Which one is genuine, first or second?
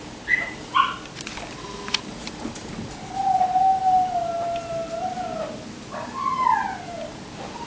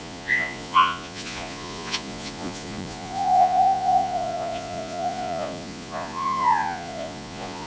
first